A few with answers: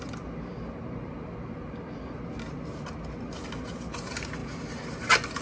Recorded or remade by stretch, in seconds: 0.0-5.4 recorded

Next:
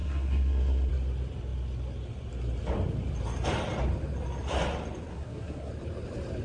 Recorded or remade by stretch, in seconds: 0.0-0.9 remade; 0.9-5.1 recorded; 5.1-5.7 remade; 5.7-6.4 recorded

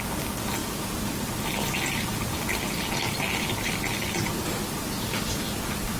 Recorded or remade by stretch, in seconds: 0.0-6.0 recorded